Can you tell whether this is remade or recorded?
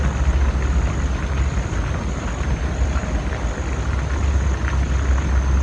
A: recorded